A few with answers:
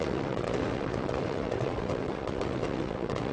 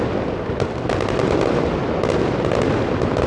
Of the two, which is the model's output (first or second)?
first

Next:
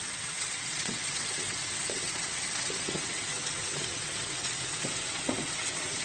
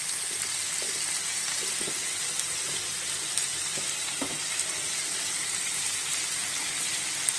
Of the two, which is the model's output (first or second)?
first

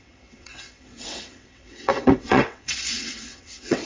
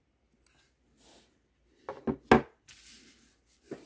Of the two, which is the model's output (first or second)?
first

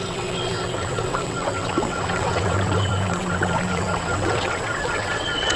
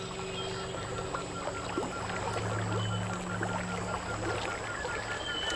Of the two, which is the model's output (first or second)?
first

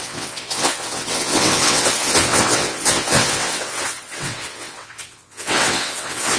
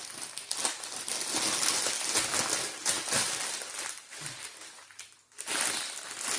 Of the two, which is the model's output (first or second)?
first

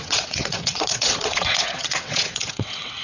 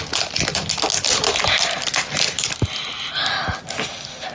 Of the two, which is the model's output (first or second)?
first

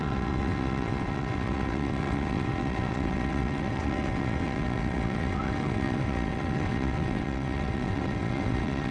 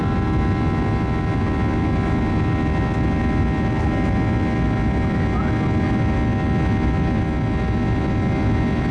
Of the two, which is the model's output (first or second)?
first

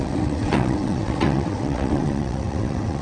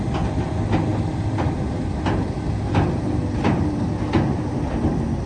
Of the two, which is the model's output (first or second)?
first